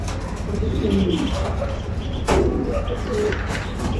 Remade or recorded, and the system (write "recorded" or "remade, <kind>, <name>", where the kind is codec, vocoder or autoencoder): recorded